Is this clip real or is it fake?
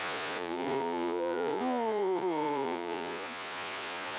fake